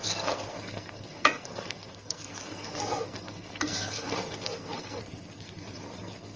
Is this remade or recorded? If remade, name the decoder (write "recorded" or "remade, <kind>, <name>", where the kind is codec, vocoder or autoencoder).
remade, codec, SNAC